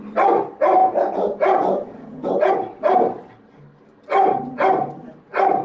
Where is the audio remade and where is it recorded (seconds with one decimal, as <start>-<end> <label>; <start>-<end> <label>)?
0.0-0.8 recorded; 0.8-2.5 remade; 2.5-5.6 recorded